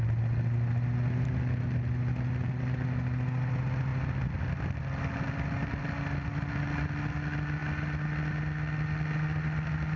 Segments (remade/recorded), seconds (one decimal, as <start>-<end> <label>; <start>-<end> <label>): 0.0-10.0 recorded